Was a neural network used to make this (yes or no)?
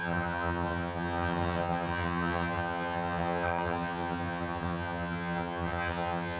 yes